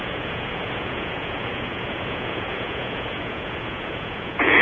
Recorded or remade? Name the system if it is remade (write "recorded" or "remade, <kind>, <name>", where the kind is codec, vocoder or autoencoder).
remade, vocoder, Vocos